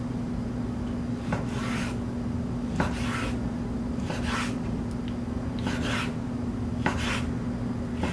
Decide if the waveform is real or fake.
real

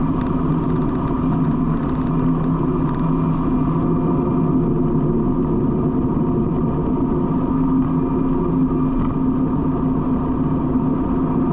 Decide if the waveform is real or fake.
real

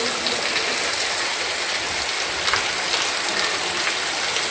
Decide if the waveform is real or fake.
real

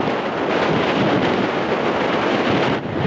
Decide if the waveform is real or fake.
real